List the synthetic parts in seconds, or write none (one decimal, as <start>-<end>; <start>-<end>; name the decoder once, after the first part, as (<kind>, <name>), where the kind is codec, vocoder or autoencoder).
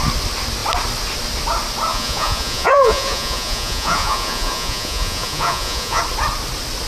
1.9-6.0 (vocoder, Vocos)